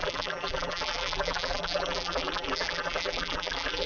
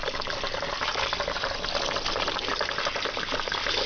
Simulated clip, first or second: first